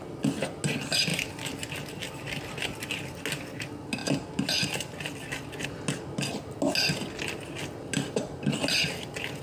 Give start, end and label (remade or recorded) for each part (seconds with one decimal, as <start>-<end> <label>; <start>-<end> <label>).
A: 0.0-9.4 recorded